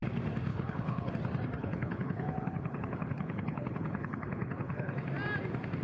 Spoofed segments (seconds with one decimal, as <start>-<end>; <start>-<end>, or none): 0.5-1.1; 1.6-5.1